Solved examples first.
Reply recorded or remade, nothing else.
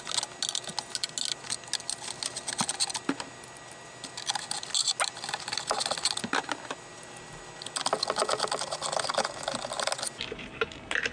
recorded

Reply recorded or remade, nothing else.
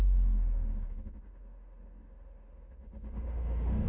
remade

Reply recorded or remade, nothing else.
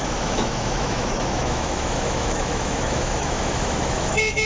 remade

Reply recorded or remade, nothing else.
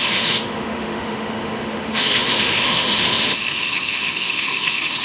remade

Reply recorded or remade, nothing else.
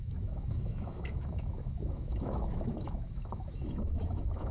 remade